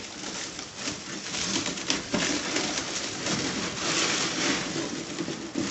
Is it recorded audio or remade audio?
recorded